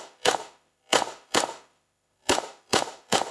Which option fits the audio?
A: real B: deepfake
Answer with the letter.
B